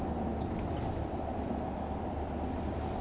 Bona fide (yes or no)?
yes